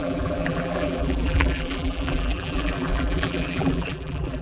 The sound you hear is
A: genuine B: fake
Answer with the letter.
B